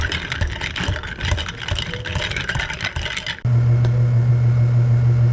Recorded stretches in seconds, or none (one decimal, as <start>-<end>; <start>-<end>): 0.0-5.3